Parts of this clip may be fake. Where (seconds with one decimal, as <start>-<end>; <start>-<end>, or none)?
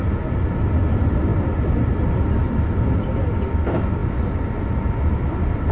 none